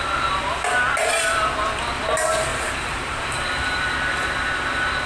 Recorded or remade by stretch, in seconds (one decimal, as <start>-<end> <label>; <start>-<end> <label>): 0.0-2.5 recorded; 2.5-3.9 remade; 3.9-5.1 recorded